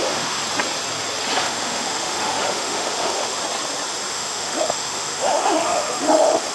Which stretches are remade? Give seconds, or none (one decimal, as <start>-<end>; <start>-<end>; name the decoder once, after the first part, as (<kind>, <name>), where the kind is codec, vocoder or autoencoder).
0.0-0.4 (autoencoder, DAC-VAE); 1.4-3.4; 4.1-6.5